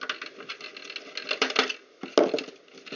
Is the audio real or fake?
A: real